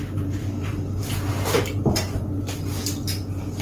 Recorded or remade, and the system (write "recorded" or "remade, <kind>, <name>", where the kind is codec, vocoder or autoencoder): recorded